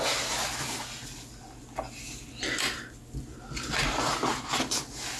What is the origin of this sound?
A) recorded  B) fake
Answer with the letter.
A